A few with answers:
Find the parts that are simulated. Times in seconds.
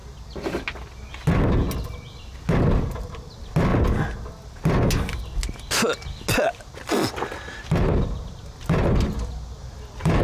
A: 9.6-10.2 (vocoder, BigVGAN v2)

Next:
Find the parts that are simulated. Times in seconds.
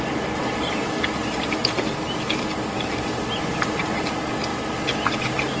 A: 0.4-3.8 (vocoder, BigVGAN v2); 4.5-5.6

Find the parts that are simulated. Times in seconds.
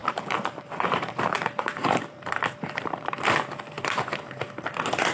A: 0.0-3.1 (vocoder, BigVGAN v2)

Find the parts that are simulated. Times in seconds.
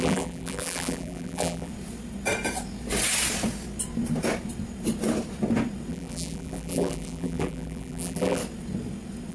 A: 0.0-1.7 (vocoder, BigVGAN v2); 5.9-8.4